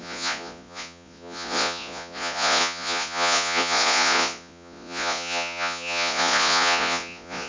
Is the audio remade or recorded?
remade